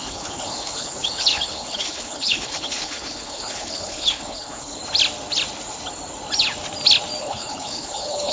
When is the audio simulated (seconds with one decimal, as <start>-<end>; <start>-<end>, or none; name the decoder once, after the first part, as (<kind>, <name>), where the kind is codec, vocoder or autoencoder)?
0.0-4.8 (codec, HILCodec); 7.2-8.3